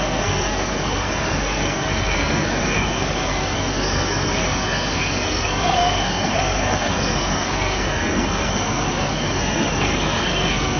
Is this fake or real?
fake